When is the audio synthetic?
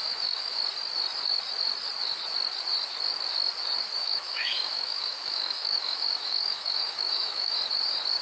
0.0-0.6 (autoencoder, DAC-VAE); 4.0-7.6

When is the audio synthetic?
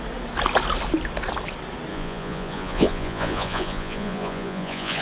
1.9-5.0 (vocoder, Vocos)